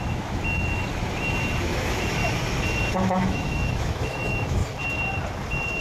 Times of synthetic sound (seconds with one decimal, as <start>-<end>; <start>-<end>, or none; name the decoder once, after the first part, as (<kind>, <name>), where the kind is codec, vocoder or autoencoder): 0.0-0.8 (autoencoder, DAC-VAE); 1.6-2.2; 2.9-4.6